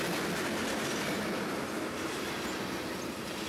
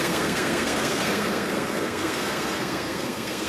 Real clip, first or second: first